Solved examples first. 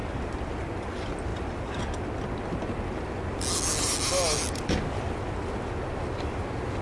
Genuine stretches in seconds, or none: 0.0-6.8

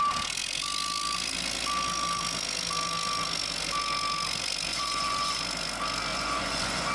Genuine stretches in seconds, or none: 0.0-4.7; 5.4-6.1

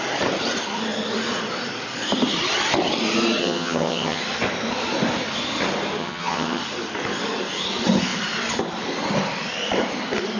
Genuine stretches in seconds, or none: 0.0-3.4; 4.2-6.0; 6.6-10.4

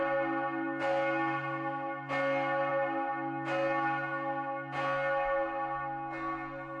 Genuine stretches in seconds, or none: 0.0-6.8